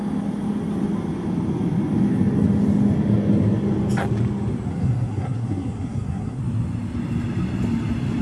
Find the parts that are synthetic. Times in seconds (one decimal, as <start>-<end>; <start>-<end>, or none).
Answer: 4.7-6.4